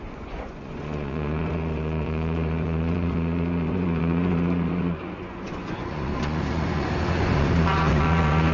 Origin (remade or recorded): remade